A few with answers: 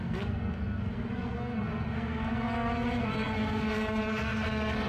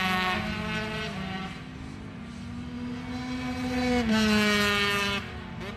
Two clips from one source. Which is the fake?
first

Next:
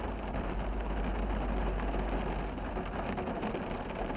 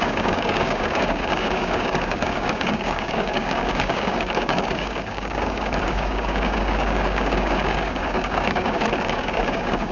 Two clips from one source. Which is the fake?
second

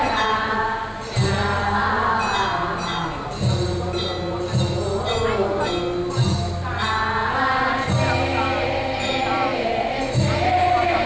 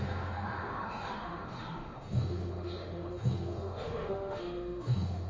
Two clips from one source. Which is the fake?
second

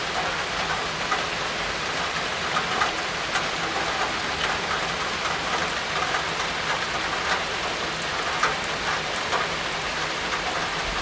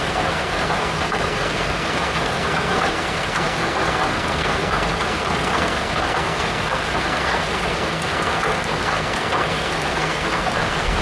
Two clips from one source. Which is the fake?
second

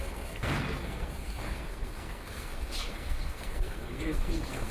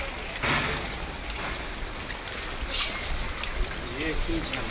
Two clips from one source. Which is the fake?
first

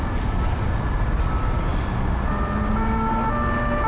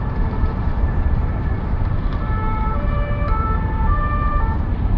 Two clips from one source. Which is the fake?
second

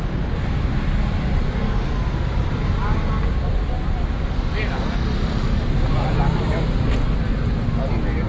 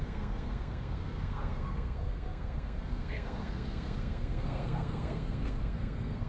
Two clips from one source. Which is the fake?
second